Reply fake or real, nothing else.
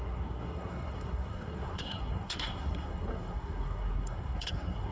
fake